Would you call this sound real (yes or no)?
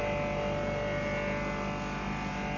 yes